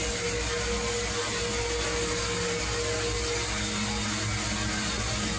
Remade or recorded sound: recorded